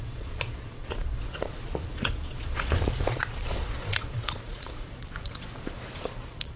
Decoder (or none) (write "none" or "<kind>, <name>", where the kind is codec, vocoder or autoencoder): vocoder, Vocos